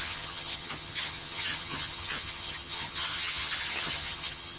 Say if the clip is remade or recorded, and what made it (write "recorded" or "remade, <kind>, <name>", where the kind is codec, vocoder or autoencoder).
remade, vocoder, HiFi-GAN